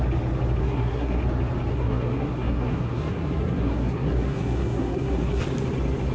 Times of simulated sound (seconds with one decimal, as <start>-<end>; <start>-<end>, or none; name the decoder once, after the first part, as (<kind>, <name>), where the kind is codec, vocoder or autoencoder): 0.6-1.2 (codec, SNAC); 1.7-5.4